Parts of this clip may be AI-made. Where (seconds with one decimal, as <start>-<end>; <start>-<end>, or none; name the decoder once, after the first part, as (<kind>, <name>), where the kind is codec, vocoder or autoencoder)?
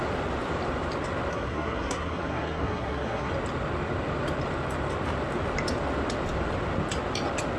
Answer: 1.3-3.3 (codec, SNAC)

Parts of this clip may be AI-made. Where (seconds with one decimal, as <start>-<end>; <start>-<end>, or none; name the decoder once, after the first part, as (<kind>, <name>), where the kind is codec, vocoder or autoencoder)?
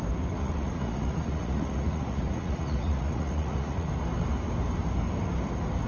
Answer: 0.4-3.9 (vocoder, Vocos)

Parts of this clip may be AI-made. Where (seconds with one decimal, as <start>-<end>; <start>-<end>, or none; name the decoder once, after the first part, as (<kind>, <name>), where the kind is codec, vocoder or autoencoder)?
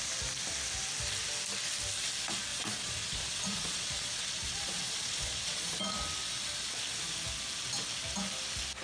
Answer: 2.5-5.8 (vocoder, Vocos)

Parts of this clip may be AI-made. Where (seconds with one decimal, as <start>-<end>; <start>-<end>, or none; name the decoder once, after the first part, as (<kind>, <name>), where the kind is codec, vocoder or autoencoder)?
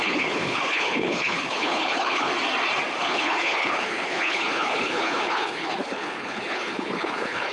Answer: 0.0-2.3 (codec, HILCodec); 3.0-7.5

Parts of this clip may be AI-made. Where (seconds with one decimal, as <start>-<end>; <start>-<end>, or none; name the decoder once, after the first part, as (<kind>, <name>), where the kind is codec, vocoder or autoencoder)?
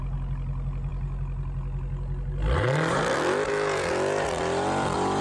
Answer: none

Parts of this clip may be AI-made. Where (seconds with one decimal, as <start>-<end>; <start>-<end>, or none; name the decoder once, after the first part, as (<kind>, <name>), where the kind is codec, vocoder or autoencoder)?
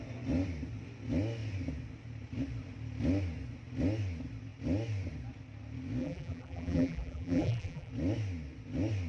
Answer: 6.0-7.9 (vocoder, BigVGAN v2)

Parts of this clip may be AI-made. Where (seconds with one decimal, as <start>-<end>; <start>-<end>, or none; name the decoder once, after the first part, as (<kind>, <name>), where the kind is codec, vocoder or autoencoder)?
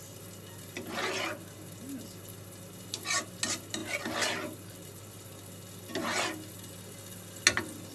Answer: none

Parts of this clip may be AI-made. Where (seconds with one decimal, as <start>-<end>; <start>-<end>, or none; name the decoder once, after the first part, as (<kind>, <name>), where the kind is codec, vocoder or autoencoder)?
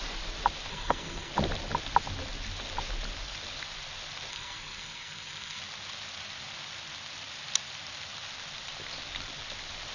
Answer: 0.7-1.3 (codec, SNAC); 4.3-5.6